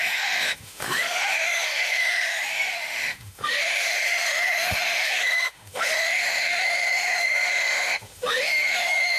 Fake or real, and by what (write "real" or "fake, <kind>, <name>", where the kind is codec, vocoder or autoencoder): fake, autoencoder, DAC-VAE